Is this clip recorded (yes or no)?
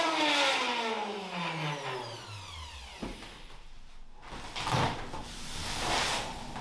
yes